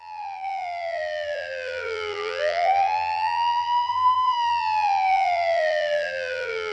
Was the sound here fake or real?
fake